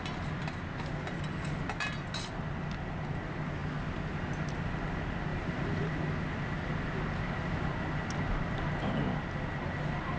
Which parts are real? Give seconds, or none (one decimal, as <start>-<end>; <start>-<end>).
0.0-5.3; 5.9-10.2